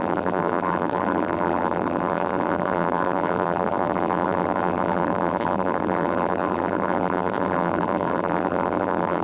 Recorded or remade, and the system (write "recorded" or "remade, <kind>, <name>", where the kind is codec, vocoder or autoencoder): remade, vocoder, BigVGAN v2